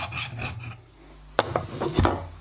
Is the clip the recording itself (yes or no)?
yes